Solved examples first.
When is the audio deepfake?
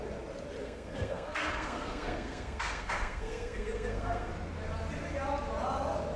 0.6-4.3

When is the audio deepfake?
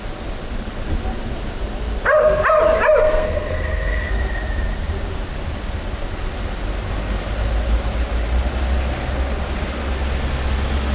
3.0-4.1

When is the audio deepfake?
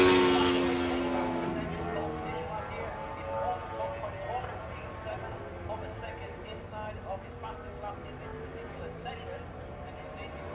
none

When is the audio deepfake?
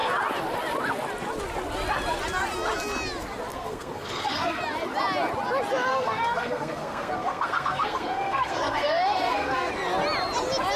3.5-4.6; 5.9-9.7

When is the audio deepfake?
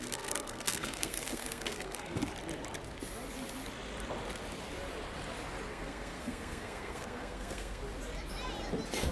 0.0-2.2; 5.7-7.8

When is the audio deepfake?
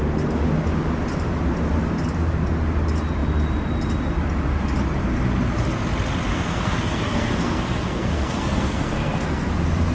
6.3-9.5